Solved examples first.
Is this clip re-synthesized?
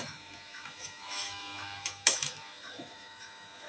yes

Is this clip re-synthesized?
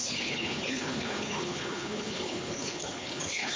yes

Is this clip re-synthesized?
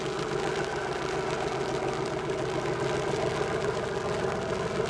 no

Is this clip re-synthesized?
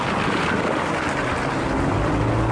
no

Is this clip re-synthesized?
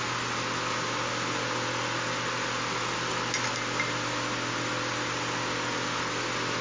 no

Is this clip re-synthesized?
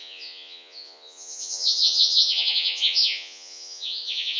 yes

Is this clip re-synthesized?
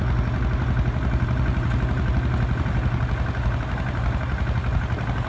no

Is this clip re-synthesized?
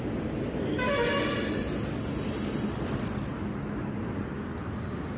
no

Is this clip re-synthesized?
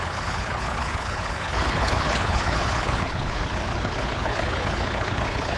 yes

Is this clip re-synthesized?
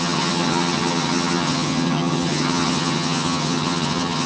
yes